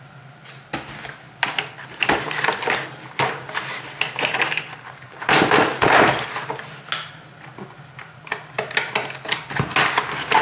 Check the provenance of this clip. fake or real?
real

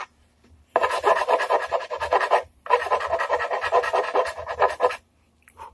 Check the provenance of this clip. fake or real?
fake